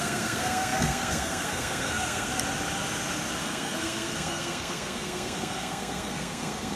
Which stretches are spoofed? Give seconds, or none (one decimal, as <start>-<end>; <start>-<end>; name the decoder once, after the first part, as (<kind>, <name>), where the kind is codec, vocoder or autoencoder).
0.0-2.3 (codec, SNAC); 3.4-6.8